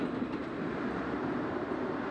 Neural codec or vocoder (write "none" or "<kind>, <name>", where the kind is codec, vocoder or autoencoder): none